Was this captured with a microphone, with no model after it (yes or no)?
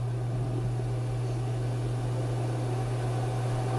yes